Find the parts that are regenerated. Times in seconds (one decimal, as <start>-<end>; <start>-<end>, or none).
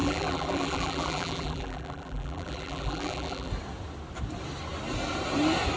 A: 0.0-3.5